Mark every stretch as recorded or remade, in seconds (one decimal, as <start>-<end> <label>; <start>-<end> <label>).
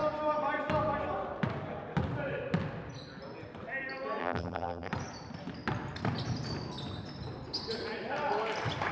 0.0-4.2 recorded; 4.2-4.9 remade; 4.9-8.9 recorded